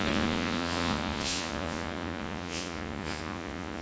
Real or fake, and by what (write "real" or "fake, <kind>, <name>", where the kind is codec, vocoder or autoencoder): fake, vocoder, Vocos